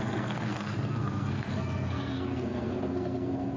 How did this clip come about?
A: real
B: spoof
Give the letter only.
B